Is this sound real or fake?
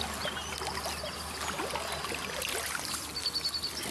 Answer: real